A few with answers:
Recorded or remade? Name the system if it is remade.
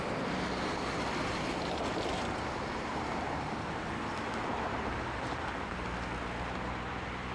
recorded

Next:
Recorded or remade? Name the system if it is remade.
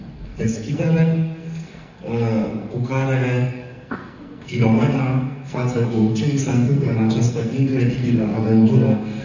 remade, codec, SNAC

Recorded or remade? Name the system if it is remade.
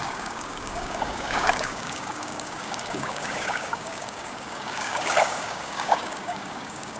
remade, codec, DAC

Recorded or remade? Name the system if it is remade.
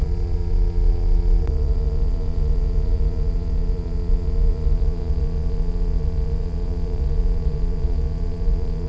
remade, vocoder, Vocos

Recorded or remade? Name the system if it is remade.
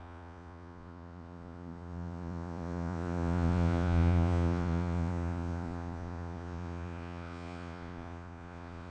remade, vocoder, Vocos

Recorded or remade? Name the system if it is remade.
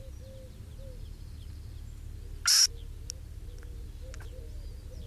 recorded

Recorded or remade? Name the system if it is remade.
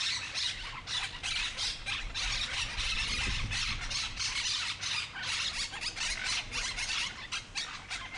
recorded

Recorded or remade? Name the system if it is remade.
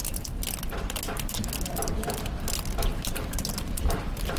recorded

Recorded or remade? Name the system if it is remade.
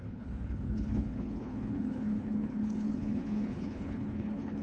remade, codec, HILCodec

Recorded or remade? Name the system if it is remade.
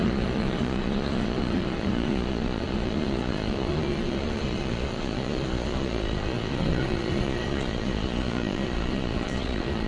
remade, vocoder, Vocos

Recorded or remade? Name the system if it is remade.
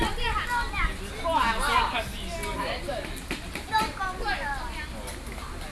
recorded